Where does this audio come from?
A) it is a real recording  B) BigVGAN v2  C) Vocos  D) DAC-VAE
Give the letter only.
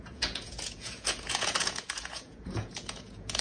C